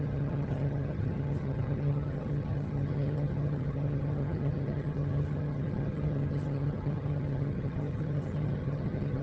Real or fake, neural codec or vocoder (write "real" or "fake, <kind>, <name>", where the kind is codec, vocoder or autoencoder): fake, vocoder, HiFi-GAN